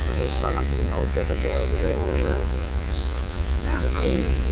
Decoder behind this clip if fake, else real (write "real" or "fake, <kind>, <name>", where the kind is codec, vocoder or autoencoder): fake, vocoder, Vocos